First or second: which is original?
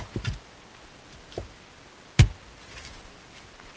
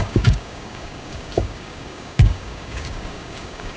first